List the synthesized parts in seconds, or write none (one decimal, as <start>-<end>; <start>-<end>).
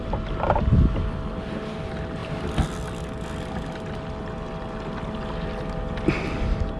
none